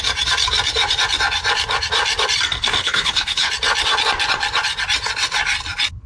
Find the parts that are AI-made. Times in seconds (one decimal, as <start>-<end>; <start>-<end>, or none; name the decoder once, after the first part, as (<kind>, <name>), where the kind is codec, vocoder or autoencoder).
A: 2.8-3.5 (codec, HILCodec)